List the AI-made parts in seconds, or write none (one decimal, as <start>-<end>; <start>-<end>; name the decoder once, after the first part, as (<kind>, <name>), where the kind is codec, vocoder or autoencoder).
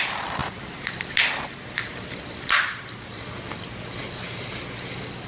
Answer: none